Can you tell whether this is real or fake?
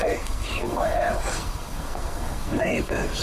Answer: fake